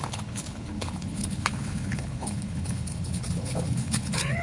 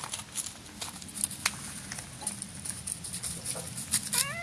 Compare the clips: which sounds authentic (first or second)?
second